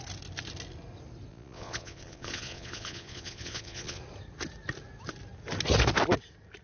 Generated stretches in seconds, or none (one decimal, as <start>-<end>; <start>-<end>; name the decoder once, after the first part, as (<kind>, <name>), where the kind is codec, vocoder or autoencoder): 1.3-4.0 (vocoder, Vocos)